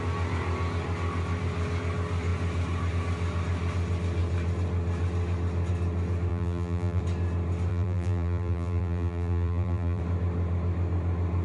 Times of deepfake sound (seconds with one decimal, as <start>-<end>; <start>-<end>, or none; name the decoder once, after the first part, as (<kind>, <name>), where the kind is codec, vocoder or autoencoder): 6.3-7.0 (vocoder, BigVGAN v2); 7.7-10.0